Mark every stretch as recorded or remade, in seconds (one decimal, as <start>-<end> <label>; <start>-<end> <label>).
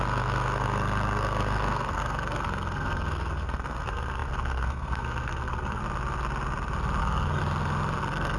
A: 0.0-5.8 remade; 5.8-7.0 recorded; 7.0-7.4 remade; 7.4-8.0 recorded; 8.0-8.4 remade